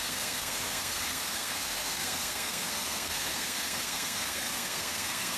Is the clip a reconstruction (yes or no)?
yes